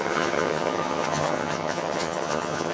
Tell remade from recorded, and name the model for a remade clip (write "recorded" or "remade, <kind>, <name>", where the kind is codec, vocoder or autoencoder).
remade, vocoder, HiFi-GAN